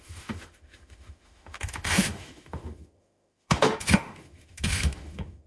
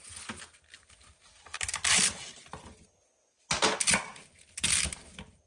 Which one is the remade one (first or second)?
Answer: first